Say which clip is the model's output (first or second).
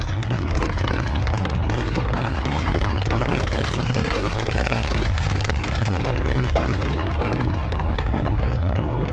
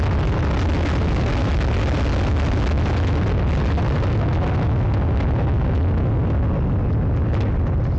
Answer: first